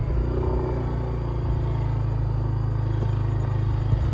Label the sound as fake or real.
real